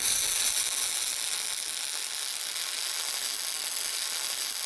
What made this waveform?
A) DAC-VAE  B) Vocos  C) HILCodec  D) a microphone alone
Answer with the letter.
D